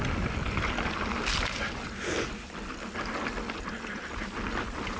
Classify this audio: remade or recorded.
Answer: recorded